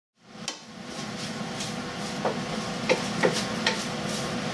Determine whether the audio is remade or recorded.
recorded